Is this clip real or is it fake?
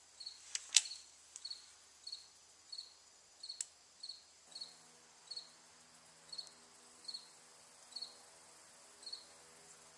real